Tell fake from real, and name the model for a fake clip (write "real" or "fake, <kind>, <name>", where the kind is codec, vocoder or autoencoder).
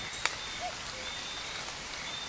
real